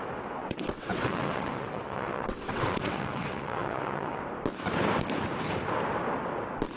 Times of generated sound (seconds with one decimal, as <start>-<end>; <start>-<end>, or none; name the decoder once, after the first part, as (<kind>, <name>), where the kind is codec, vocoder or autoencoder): 0.4-4.2 (vocoder, WaveNeXt)

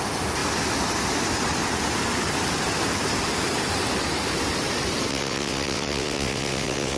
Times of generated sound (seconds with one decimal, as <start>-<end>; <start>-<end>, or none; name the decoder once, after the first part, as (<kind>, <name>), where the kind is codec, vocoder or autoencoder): 5.1-7.0 (vocoder, WaveNeXt)